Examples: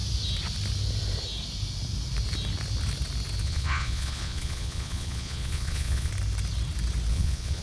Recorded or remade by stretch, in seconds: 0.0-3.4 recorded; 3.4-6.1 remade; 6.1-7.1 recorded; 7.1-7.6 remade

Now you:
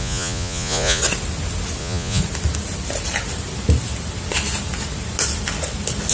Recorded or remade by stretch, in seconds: 0.0-1.0 remade; 1.0-1.8 recorded; 1.8-2.2 remade; 2.2-6.1 recorded